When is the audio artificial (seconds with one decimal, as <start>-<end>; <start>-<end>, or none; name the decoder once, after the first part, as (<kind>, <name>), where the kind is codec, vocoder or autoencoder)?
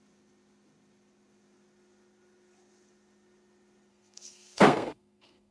3.9-5.5 (codec, SNAC)